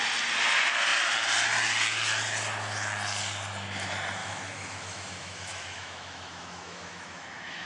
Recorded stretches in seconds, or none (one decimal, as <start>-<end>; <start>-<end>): 0.0-4.2